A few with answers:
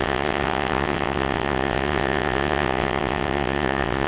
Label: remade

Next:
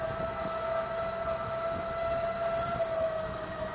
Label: recorded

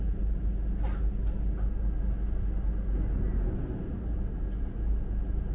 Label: recorded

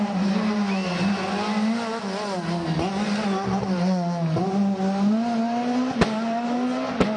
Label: recorded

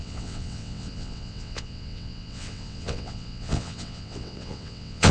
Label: remade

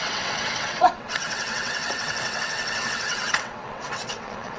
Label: remade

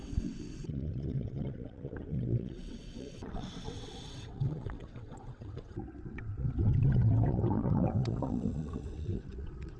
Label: remade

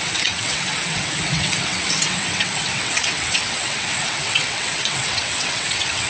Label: remade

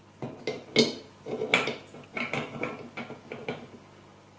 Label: recorded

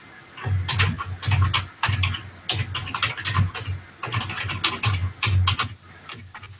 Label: recorded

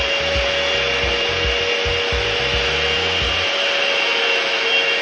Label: recorded